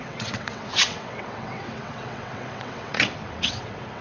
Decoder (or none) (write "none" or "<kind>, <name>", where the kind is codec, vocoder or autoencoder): vocoder, WaveNeXt